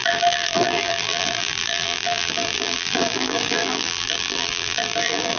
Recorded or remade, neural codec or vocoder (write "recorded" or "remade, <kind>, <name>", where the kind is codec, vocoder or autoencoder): remade, vocoder, BigVGAN v2